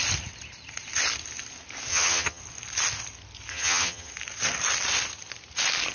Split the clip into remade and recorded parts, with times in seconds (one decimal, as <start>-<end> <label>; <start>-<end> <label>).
0.0-1.9 recorded; 1.9-2.4 remade; 2.4-3.5 recorded; 3.5-4.1 remade; 4.1-5.9 recorded